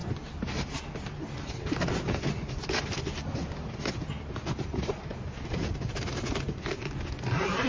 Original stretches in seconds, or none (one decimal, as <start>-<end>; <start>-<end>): 0.0-7.7